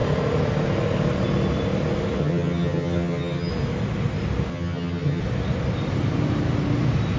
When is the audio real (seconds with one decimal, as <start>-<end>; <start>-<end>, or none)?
0.0-2.2; 3.5-4.5; 5.2-7.2